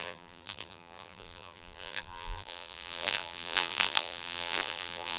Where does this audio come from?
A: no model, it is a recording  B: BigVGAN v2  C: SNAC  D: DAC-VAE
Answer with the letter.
B